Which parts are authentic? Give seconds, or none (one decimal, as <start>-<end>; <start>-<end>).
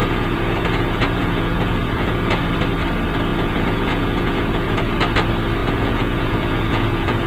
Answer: 2.4-3.3; 4.9-5.6